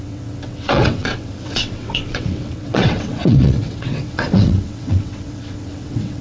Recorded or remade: remade